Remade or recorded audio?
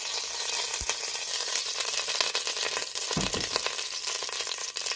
recorded